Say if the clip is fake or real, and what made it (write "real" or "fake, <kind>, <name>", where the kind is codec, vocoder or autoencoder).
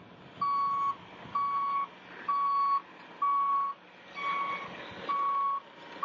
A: real